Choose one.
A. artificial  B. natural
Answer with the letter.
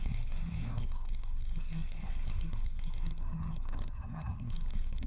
A